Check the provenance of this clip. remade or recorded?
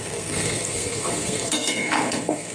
remade